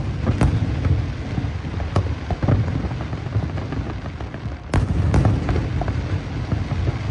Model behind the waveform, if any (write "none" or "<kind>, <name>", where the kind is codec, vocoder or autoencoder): none